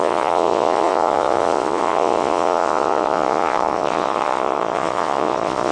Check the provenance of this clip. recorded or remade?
remade